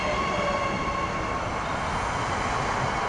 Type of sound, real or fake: real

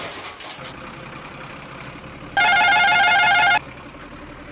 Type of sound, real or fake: real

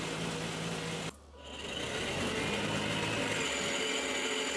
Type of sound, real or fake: real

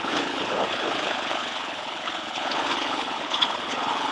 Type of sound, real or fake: fake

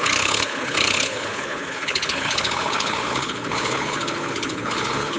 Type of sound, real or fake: fake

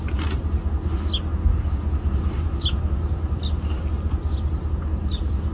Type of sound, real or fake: real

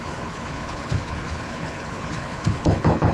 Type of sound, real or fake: fake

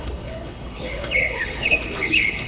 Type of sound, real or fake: fake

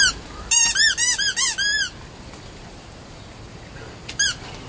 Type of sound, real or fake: real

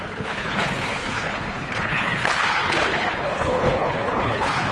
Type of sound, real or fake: fake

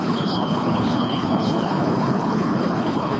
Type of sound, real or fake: fake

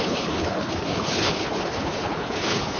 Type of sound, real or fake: fake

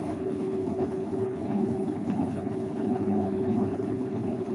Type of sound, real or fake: fake